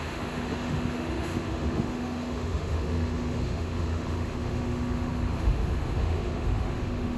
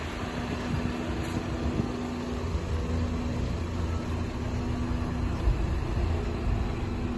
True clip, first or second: second